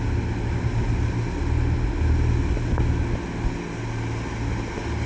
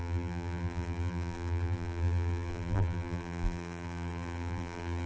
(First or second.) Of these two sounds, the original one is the first